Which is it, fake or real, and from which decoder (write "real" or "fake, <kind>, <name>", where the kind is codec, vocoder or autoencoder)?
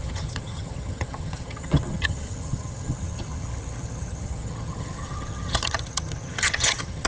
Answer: fake, vocoder, HiFi-GAN